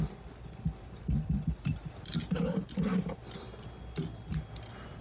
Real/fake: real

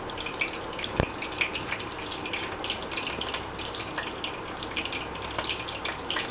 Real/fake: real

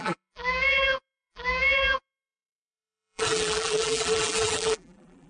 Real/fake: fake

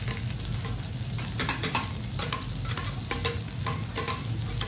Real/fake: real